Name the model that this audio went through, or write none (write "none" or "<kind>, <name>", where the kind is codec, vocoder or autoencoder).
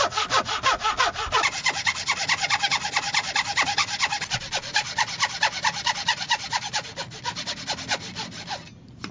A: none